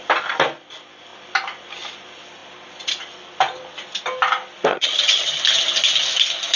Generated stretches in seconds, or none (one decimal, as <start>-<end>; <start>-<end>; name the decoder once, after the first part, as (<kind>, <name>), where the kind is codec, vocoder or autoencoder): 4.7-5.4 (vocoder, HiFi-GAN)